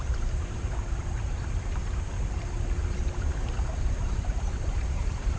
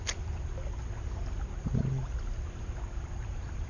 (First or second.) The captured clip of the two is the second